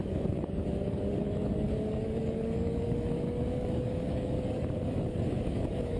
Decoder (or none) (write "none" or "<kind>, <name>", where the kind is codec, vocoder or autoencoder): codec, DAC